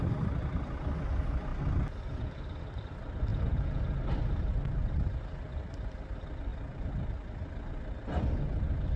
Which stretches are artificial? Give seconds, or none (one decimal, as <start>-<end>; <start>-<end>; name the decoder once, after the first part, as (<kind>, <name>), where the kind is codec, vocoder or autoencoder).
3.3-3.8 (vocoder, Vocos)